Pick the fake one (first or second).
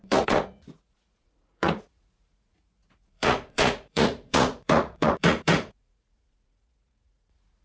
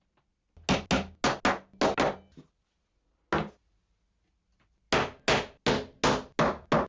first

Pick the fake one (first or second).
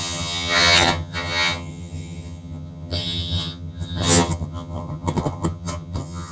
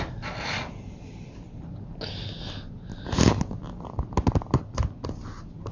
first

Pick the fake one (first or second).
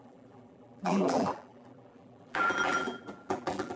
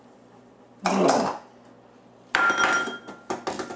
first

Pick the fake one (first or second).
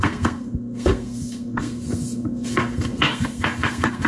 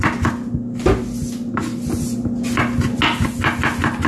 first